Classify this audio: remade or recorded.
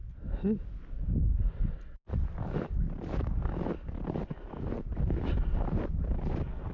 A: recorded